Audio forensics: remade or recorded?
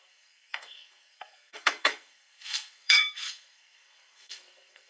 remade